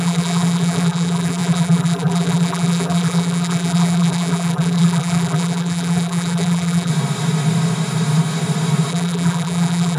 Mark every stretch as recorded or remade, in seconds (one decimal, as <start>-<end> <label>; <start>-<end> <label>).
0.0-6.9 remade; 6.9-8.9 recorded; 8.9-10.0 remade